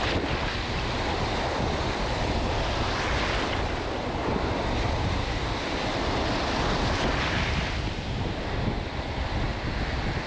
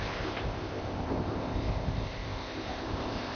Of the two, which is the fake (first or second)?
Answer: second